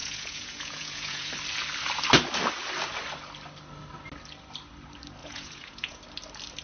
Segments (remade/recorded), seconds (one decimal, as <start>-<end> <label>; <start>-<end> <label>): 0.0-1.3 remade; 1.3-5.2 recorded; 5.2-6.0 remade; 6.0-6.6 recorded